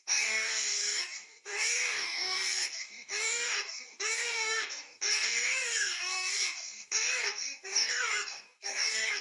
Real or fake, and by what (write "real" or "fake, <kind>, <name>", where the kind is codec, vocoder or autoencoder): fake, codec, DAC